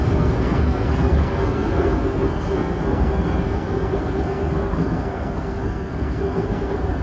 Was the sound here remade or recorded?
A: remade